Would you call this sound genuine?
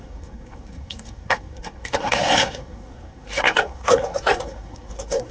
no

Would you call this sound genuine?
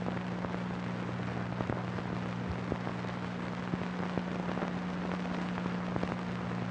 yes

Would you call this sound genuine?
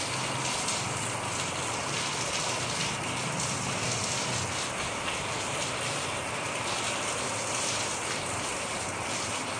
yes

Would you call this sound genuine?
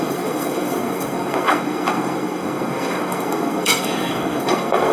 no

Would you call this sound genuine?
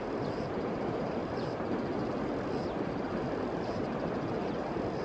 yes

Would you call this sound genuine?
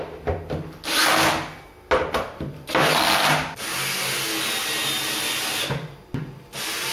yes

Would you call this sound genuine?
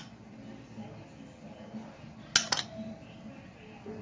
yes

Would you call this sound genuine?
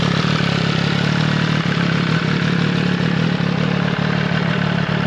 yes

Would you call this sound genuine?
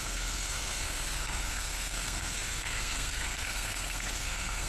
no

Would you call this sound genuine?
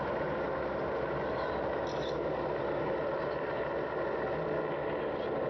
yes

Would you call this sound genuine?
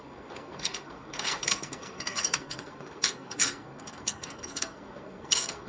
no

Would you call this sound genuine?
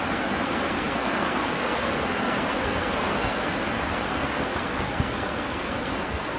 no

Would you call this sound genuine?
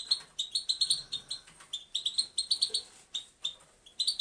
yes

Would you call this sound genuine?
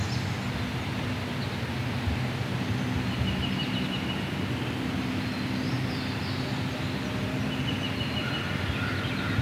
yes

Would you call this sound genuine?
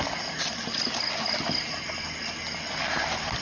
yes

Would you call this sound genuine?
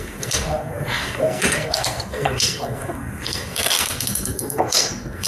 no